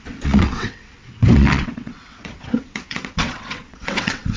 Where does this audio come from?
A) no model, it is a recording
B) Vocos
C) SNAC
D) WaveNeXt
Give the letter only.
D